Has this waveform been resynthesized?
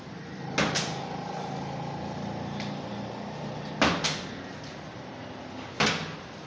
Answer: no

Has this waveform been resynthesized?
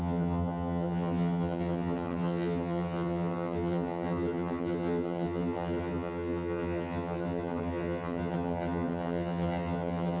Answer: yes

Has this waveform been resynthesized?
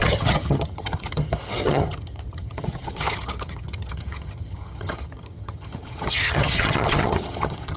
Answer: yes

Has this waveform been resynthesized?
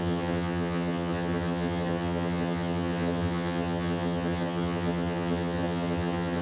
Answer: yes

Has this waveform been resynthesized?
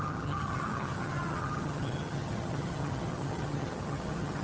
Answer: yes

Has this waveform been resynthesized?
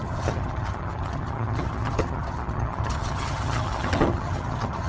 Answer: yes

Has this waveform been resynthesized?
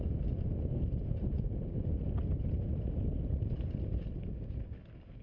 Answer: no